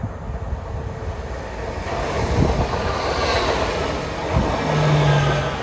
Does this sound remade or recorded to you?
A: recorded